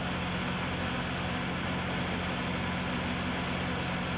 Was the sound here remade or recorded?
recorded